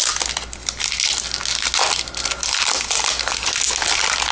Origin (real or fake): real